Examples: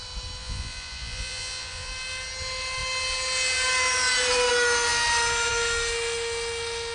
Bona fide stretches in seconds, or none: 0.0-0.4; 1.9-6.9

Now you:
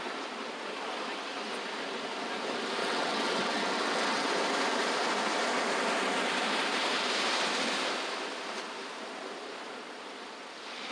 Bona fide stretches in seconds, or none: 0.0-2.8; 4.3-10.9

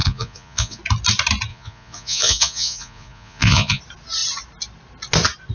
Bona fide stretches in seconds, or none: 0.8-1.5; 3.8-5.5